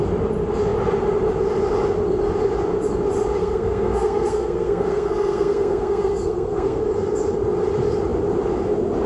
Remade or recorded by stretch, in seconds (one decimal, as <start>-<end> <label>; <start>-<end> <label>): 0.0-3.4 recorded; 3.4-6.8 remade; 6.8-9.1 recorded